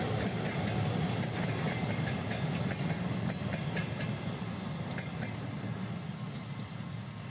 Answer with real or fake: real